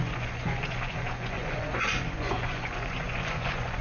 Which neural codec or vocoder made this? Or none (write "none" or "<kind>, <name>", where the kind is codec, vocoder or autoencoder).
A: vocoder, Vocos